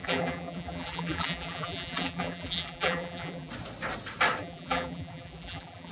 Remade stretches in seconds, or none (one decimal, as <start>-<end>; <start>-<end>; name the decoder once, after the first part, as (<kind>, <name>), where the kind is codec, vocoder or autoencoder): 0.0-3.5 (vocoder, BigVGAN v2); 4.4-5.9